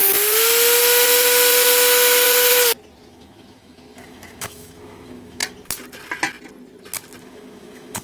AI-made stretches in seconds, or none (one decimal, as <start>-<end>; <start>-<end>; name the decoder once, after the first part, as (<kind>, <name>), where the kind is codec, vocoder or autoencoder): 3.1-5.4 (autoencoder, DAC-VAE); 7.2-8.0